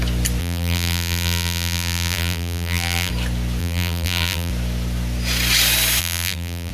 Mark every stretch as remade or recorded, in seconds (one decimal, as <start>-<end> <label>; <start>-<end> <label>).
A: 0.0-0.4 recorded; 0.4-3.1 remade; 3.1-3.6 recorded; 3.6-4.5 remade; 4.5-6.0 recorded; 6.0-6.7 remade